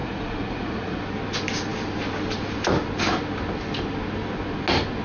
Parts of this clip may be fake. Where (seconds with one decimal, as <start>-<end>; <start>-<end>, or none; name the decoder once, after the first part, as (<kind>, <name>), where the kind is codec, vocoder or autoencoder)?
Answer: 0.0-1.0 (vocoder, Vocos)